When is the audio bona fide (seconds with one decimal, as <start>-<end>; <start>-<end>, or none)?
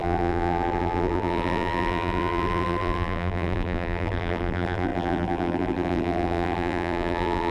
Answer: none